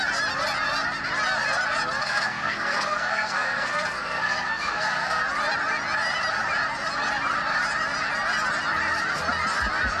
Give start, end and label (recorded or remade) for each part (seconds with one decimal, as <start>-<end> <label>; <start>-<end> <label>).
0.0-2.0 recorded; 2.0-5.2 remade; 5.2-10.0 recorded